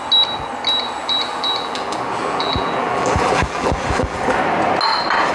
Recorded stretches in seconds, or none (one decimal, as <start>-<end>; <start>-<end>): 0.0-1.0; 4.2-5.3